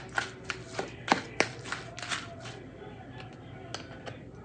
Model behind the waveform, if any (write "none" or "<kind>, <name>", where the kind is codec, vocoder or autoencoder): none